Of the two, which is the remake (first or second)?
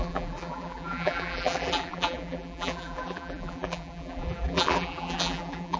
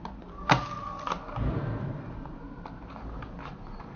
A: first